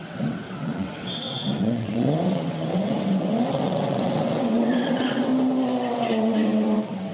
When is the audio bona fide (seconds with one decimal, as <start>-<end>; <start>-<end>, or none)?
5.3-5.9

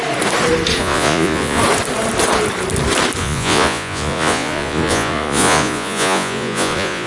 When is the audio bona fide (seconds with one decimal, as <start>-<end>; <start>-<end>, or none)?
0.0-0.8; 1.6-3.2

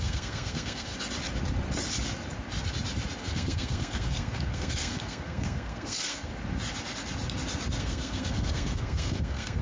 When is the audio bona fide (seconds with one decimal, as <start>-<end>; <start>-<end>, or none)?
0.9-3.2; 6.3-7.8

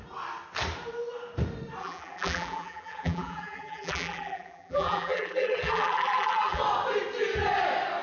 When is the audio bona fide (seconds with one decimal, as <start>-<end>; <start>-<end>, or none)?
0.0-1.8; 6.6-8.0

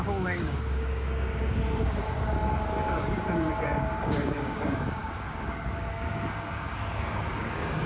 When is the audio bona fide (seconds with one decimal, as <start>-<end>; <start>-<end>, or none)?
none